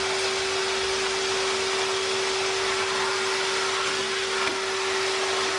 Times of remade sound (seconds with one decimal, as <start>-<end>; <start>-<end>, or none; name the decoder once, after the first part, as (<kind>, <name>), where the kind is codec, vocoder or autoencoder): none